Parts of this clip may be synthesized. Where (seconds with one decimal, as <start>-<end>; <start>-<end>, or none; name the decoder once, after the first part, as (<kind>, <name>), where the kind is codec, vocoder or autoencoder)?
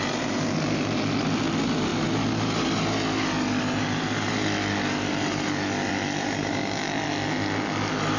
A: none